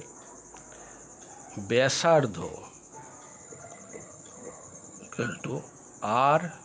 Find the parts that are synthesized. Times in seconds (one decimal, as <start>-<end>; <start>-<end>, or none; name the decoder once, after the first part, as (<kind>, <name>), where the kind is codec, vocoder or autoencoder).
3.3-5.5 (vocoder, HiFi-GAN)